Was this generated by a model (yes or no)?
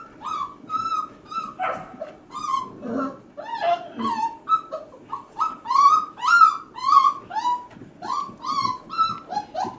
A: no